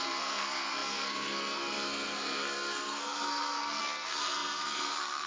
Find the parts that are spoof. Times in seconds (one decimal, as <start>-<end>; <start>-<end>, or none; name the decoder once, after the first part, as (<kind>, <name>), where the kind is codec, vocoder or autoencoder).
0.0-5.3 (codec, SNAC)

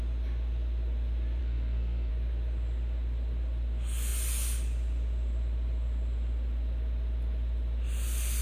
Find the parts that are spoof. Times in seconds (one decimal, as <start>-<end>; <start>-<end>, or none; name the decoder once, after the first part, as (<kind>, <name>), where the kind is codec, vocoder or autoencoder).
1.4-2.1 (codec, SNAC)

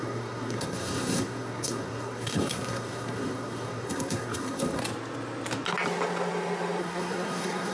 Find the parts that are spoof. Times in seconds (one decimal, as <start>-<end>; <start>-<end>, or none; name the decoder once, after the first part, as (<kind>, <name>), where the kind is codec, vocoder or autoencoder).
0.0-4.8 (codec, SNAC); 6.8-7.7